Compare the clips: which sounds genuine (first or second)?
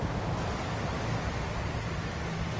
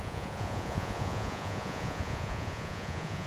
first